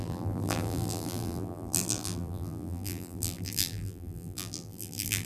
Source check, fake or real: fake